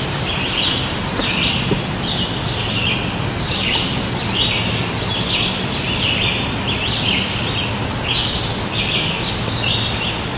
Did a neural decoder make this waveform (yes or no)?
no